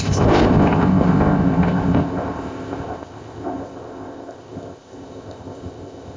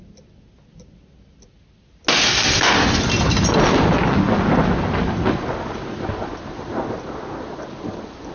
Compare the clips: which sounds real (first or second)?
second